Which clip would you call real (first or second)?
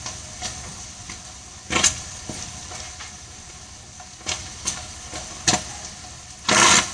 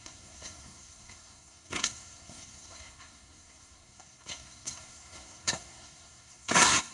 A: first